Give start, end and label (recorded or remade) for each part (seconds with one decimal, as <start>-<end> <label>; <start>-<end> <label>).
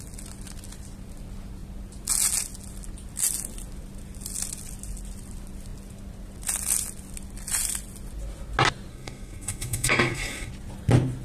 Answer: 0.0-8.9 recorded; 8.9-10.5 remade; 10.5-11.2 recorded